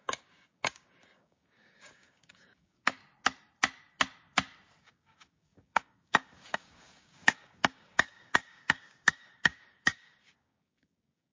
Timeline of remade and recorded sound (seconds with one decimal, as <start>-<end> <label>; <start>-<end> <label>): 0.0-3.0 remade; 3.0-4.8 recorded; 4.8-11.3 remade